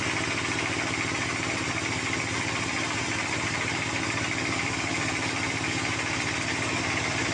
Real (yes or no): yes